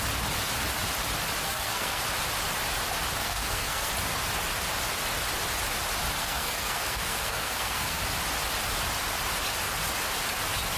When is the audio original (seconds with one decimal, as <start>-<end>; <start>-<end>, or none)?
0.0-1.4; 2.0-3.2; 3.9-6.2; 8.0-10.8